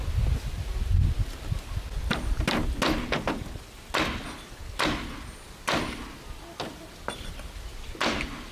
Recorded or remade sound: recorded